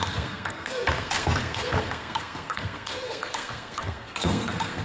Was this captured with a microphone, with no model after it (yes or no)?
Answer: no